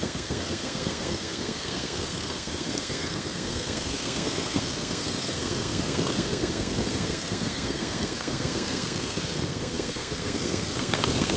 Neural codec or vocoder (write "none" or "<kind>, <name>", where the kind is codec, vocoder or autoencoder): codec, SNAC